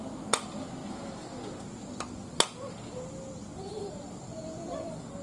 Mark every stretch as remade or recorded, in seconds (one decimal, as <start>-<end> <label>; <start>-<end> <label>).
0.0-5.2 recorded